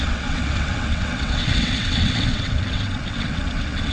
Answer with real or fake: fake